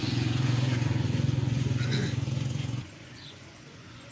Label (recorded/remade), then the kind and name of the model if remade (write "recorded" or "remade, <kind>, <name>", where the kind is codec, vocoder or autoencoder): remade, vocoder, Vocos